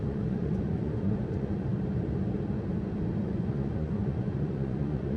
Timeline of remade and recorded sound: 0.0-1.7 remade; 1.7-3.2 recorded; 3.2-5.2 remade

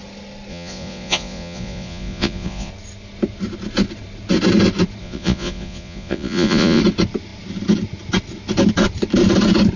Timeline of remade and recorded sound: 0.0-0.5 recorded; 0.5-2.7 remade; 2.7-5.0 recorded; 5.0-6.8 remade; 6.8-9.8 recorded

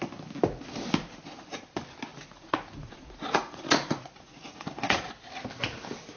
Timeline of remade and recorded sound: 0.0-2.1 recorded; 2.1-5.1 remade; 5.1-6.2 recorded

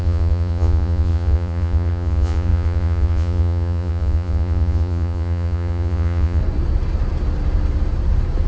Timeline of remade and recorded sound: 0.0-6.4 remade; 6.4-8.5 recorded

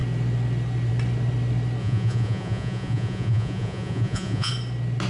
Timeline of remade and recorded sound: 0.0-1.8 recorded; 1.8-4.5 remade; 4.5-5.1 recorded